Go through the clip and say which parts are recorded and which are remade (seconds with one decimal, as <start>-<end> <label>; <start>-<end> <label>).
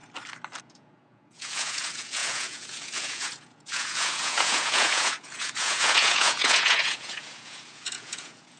0.0-0.6 recorded; 0.6-8.6 remade